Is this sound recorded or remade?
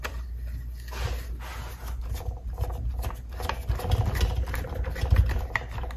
recorded